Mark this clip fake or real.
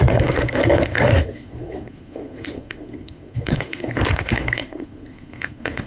fake